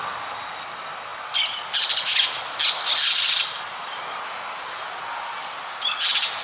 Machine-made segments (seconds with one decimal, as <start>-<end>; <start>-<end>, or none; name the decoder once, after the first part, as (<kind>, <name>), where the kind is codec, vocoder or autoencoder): none